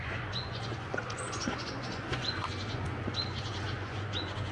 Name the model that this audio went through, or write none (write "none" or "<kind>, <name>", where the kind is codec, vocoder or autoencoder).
vocoder, Vocos